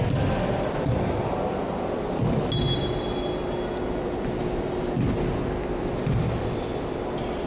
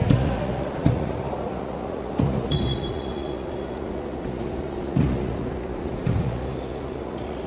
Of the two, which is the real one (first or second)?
first